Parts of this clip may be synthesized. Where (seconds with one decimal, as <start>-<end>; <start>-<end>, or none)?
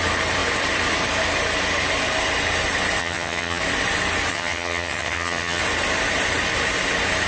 3.0-3.6; 4.3-5.6